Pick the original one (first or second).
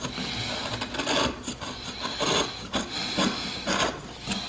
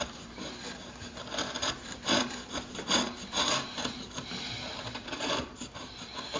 first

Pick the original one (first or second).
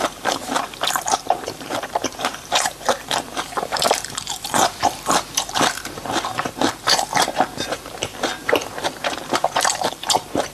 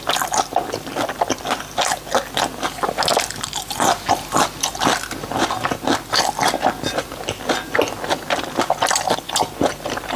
second